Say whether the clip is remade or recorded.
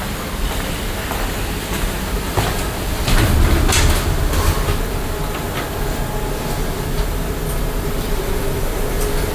recorded